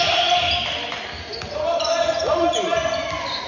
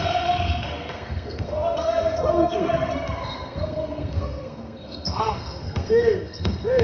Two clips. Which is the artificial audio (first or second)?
second